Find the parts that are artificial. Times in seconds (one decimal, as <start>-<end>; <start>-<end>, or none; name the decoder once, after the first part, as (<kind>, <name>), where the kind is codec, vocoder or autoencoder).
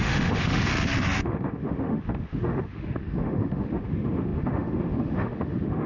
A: 0.0-0.7 (autoencoder, DAC-VAE); 1.2-5.9